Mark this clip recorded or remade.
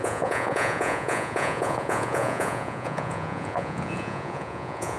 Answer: remade